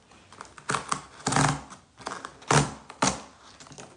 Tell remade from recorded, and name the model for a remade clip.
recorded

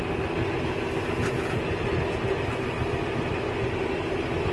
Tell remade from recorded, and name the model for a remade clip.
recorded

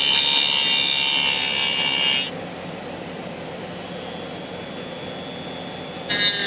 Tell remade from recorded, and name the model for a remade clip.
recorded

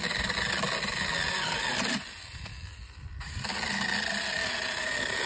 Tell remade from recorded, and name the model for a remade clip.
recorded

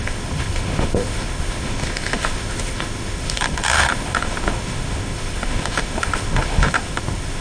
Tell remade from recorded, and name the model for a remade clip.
remade, autoencoder, DAC-VAE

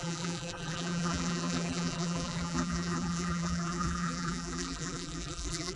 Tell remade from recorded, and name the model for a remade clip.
remade, vocoder, BigVGAN v2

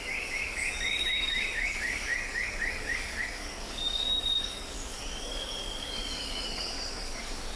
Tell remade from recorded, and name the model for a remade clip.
remade, codec, DAC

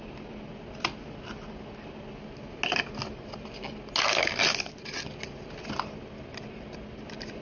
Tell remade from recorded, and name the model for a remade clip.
recorded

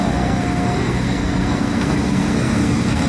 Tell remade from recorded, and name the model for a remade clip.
remade, codec, SNAC